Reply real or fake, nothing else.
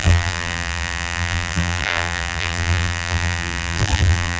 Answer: fake